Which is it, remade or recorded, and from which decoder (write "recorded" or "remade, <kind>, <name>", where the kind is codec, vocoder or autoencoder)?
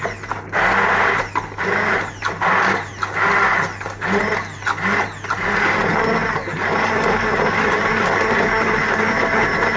recorded